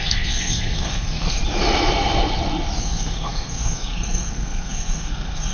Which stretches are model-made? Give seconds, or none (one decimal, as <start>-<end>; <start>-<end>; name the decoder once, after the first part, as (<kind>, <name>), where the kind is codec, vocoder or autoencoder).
0.0-1.4 (codec, SNAC); 2.8-5.5